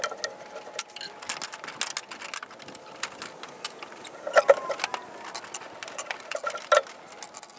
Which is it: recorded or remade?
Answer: recorded